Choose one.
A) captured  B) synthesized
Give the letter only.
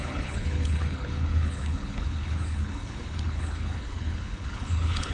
B